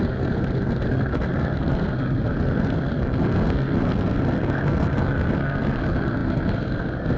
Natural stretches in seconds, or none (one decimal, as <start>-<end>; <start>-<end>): none